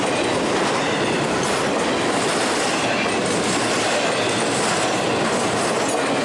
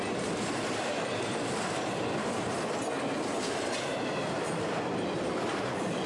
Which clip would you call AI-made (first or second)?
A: second